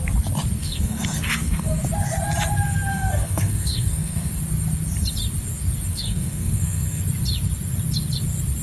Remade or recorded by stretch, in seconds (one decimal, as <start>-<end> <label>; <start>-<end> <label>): 0.0-0.6 recorded; 0.6-1.8 remade; 1.8-2.9 recorded; 2.9-4.4 remade; 4.4-5.9 recorded; 5.9-7.0 remade; 7.0-8.6 recorded